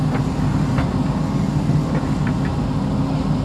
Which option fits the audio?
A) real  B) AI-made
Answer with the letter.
A